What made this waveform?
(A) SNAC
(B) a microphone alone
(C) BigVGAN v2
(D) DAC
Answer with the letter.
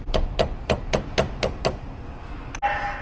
B